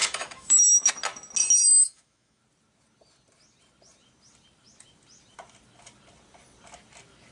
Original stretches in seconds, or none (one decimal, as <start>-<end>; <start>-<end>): 0.9-1.8; 2.4-7.3